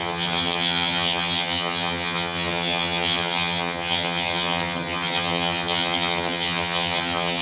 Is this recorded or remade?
remade